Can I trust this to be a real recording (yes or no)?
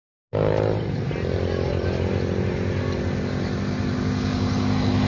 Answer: yes